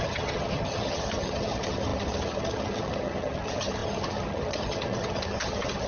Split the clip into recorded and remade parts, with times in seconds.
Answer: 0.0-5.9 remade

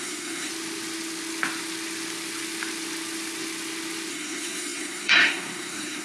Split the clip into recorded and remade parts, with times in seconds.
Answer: 0.0-0.5 remade; 0.5-4.1 recorded; 4.1-6.0 remade

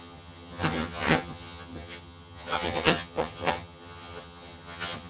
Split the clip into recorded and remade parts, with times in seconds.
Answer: 0.0-5.1 remade

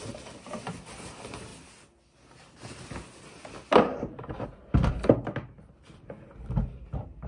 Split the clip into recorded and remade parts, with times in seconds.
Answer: 0.0-7.3 recorded

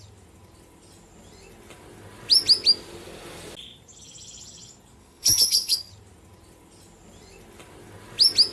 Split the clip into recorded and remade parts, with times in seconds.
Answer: 0.0-5.0 recorded; 5.0-5.9 remade; 5.9-8.5 recorded

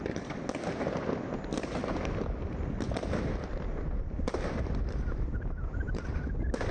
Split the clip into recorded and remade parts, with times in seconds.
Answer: 0.0-1.5 recorded; 1.5-5.5 remade; 5.5-6.7 recorded

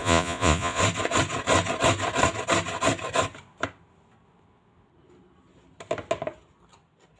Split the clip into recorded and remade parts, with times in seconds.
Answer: 0.0-0.8 remade; 0.8-7.2 recorded

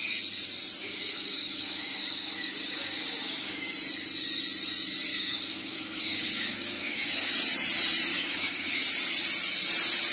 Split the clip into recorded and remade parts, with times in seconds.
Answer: 0.0-0.8 recorded; 0.8-3.7 remade; 3.7-5.1 recorded; 5.1-7.3 remade; 7.3-8.1 recorded; 8.1-8.8 remade; 8.8-10.1 recorded